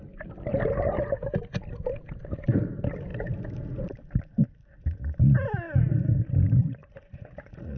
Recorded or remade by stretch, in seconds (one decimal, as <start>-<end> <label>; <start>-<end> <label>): 0.0-6.8 recorded; 6.8-7.8 remade

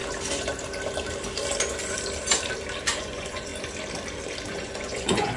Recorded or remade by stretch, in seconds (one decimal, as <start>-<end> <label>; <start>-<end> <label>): 0.0-3.0 recorded; 3.0-3.5 remade; 3.5-4.5 recorded; 4.5-5.4 remade

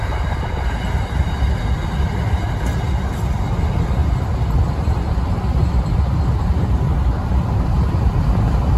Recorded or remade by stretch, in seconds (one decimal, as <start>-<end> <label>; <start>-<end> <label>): 0.0-8.8 recorded

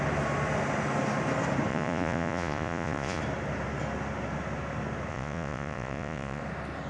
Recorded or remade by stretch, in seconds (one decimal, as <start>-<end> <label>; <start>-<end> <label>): 0.0-1.7 recorded; 1.7-3.2 remade; 3.2-5.1 recorded; 5.1-6.4 remade; 6.4-6.9 recorded

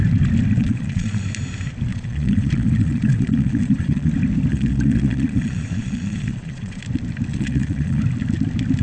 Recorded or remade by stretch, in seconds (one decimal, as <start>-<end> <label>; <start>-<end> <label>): 0.0-0.6 recorded; 0.6-1.2 remade; 1.2-1.9 recorded; 1.9-4.1 remade; 4.1-4.5 recorded; 4.5-6.8 remade; 6.8-7.3 recorded; 7.3-8.0 remade; 8.0-8.8 recorded

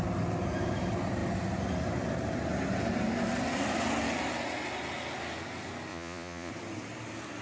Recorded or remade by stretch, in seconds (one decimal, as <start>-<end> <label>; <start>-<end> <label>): 0.0-5.9 recorded; 5.9-6.5 remade; 6.5-7.4 recorded

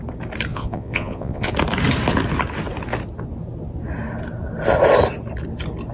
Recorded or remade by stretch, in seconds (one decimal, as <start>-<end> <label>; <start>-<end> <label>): 0.0-0.5 recorded; 0.5-1.5 remade; 1.5-5.9 recorded

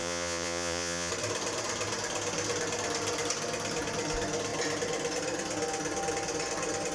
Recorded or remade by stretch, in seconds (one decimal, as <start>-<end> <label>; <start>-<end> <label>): 0.0-1.1 remade; 1.1-6.9 recorded